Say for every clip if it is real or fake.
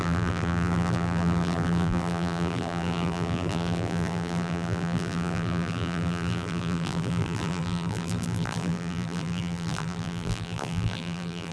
fake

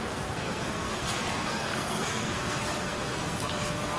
fake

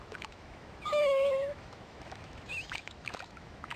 fake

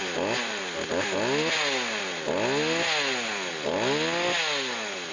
real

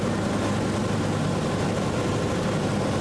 real